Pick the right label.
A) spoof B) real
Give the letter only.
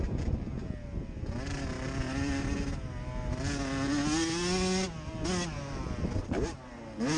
B